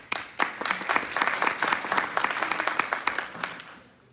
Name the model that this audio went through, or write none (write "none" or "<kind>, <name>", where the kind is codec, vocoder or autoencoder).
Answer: none